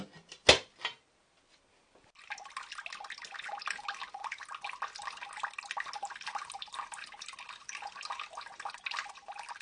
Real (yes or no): yes